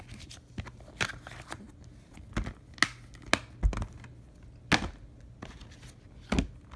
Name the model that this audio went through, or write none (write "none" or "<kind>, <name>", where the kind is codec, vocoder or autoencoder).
none